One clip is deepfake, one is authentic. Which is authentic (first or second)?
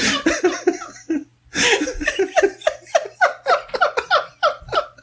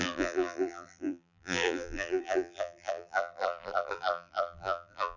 first